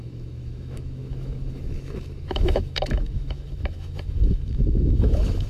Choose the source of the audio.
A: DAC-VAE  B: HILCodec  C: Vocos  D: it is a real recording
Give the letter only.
A